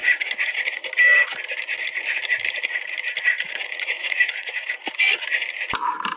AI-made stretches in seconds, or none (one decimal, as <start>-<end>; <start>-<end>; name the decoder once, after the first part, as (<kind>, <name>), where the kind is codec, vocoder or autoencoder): 0.0-0.8 (vocoder, Vocos); 3.3-4.8